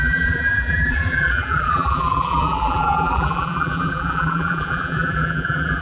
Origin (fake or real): fake